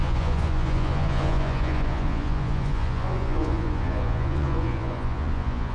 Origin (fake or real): fake